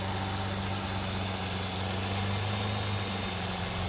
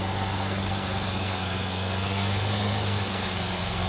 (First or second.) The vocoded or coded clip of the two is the second